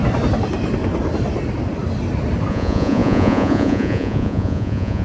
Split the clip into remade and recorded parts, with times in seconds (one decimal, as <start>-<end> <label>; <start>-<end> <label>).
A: 0.0-2.5 recorded; 2.5-5.0 remade